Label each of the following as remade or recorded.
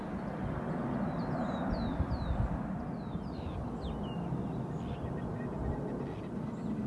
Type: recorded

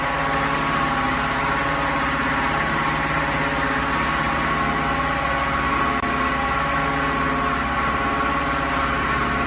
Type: recorded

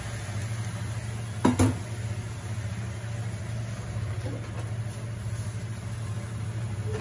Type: recorded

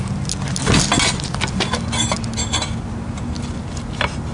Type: recorded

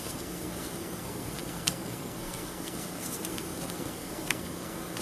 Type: remade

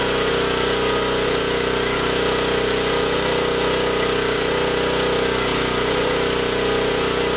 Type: remade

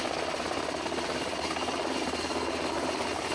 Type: recorded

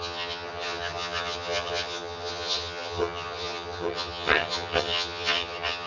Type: remade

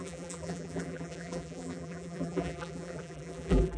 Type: remade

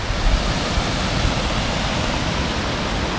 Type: recorded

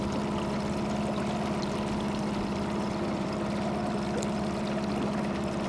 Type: recorded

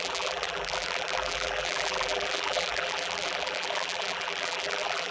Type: remade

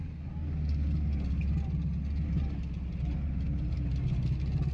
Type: recorded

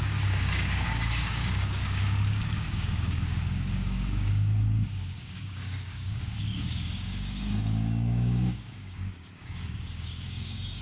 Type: remade